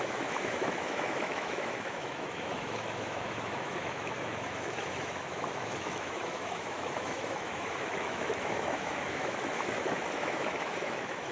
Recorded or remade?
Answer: remade